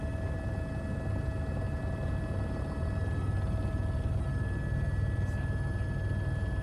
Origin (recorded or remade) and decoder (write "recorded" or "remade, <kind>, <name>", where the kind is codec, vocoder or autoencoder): recorded